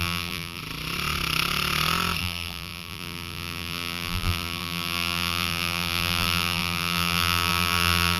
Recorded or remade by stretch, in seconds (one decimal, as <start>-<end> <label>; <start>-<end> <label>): 0.0-0.6 remade; 0.6-2.2 recorded; 2.2-8.2 remade